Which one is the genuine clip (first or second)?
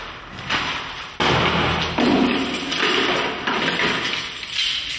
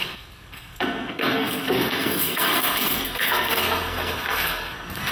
first